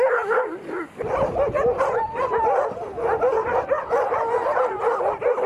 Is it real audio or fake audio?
real